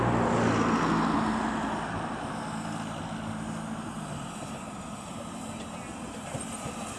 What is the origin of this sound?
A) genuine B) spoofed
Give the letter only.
A